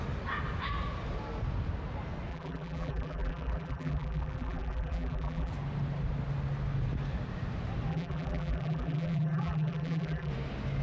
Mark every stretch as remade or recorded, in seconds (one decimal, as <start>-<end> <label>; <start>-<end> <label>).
0.0-2.3 recorded; 2.3-5.5 remade; 5.5-7.9 recorded; 7.9-10.3 remade; 10.3-10.8 recorded